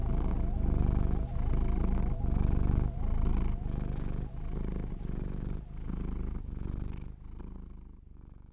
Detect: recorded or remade recorded